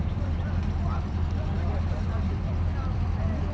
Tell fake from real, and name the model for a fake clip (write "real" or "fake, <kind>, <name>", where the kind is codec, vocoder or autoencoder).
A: fake, vocoder, BigVGAN v2